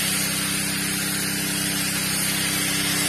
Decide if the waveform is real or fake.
real